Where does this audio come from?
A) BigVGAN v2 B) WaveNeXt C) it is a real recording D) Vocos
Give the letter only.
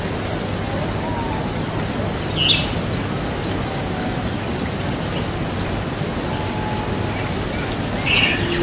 C